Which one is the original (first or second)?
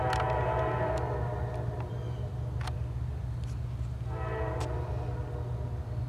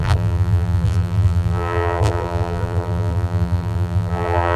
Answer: first